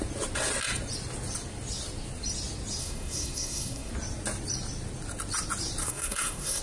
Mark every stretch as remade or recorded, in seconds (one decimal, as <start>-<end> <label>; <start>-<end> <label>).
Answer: 0.0-2.8 recorded; 2.8-3.9 remade; 3.9-5.8 recorded; 5.8-6.6 remade